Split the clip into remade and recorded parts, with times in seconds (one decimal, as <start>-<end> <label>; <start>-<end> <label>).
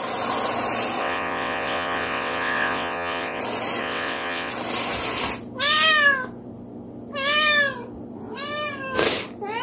0.0-1.0 recorded; 1.0-3.4 remade; 3.4-3.8 recorded; 3.8-4.5 remade; 4.5-9.6 recorded